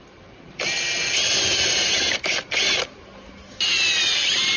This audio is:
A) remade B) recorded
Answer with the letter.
B